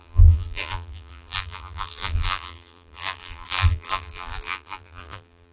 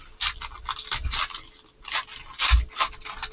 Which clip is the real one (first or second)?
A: second